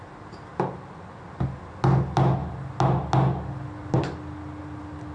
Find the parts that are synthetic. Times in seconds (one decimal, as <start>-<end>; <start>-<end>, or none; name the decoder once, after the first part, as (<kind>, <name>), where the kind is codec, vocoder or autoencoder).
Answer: 0.0-0.5 (vocoder, BigVGAN v2); 1.2-2.4; 4.6-5.1